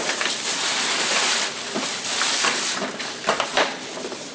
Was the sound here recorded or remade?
remade